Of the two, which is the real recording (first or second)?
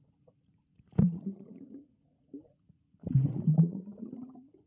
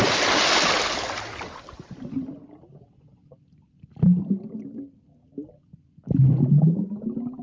second